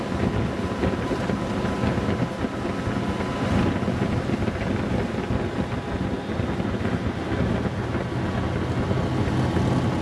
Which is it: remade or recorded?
recorded